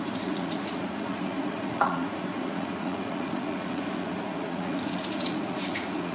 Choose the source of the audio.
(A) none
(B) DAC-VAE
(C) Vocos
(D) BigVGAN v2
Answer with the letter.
C